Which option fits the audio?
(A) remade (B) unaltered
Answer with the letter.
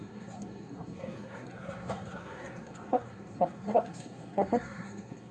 A